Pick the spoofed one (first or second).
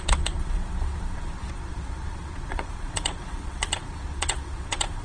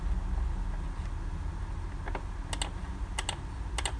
first